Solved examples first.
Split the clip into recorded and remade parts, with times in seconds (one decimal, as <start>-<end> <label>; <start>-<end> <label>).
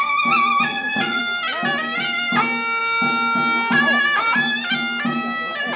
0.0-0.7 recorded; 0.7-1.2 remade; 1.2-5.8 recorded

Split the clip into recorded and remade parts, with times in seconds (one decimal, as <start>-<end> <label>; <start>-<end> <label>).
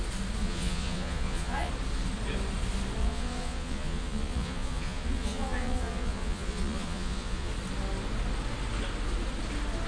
0.0-0.4 recorded; 0.4-1.7 remade; 1.7-3.0 recorded; 3.0-7.5 remade; 7.5-9.9 recorded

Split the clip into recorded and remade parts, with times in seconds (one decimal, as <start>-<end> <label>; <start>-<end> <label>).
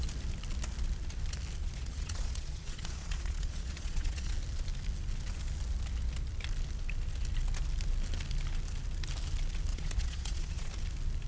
0.0-1.6 recorded; 1.6-4.3 remade; 4.3-9.7 recorded; 9.7-10.7 remade; 10.7-11.3 recorded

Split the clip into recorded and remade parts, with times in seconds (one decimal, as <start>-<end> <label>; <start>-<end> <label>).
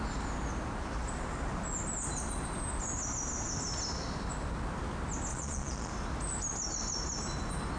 0.0-5.3 recorded; 5.3-5.9 remade; 5.9-7.8 recorded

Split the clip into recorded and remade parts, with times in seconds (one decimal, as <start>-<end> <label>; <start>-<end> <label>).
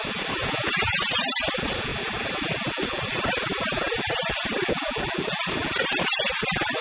0.0-0.4 recorded; 0.4-1.2 remade; 1.2-6.8 recorded